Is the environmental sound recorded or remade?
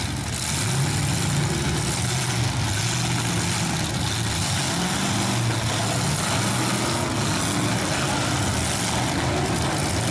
recorded